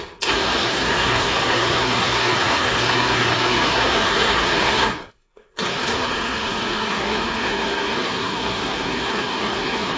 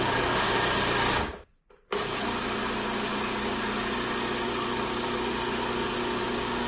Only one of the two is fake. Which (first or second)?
first